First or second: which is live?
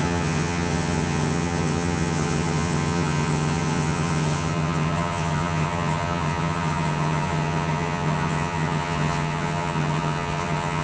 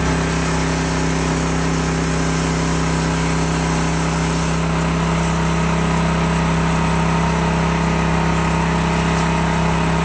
second